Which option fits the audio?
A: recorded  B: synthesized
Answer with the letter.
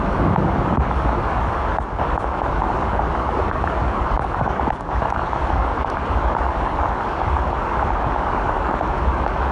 B